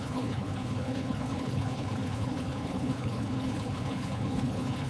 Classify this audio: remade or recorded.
remade